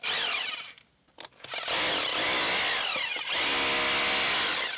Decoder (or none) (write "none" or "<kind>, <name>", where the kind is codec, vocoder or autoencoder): none